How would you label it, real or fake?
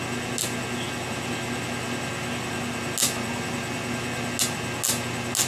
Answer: real